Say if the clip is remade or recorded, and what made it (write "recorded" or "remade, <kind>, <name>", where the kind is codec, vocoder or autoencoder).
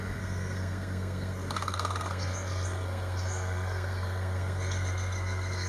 remade, codec, SNAC